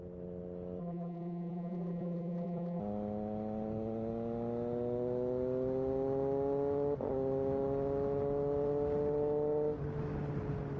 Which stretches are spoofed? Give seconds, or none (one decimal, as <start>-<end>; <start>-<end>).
0.8-2.8